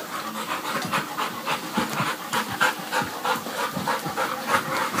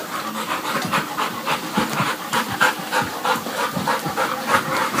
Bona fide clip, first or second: first